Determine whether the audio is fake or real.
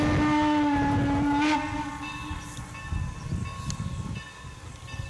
real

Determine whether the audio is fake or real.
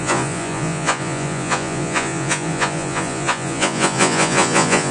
fake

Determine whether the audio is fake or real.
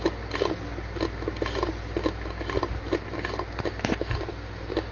real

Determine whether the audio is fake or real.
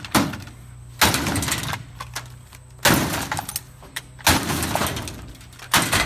real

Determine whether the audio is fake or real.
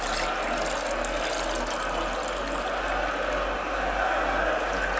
real